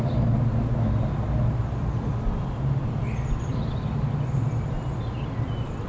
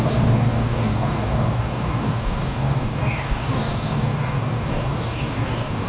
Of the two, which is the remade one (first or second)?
second